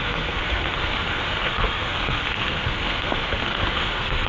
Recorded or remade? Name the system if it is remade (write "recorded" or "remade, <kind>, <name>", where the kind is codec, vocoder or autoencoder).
remade, codec, SNAC